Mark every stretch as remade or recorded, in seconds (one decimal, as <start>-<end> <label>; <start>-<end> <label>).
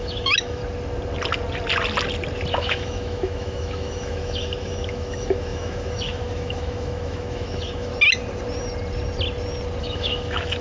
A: 0.0-0.6 remade; 0.6-2.5 recorded; 2.5-7.9 remade; 7.9-9.8 recorded; 9.8-10.6 remade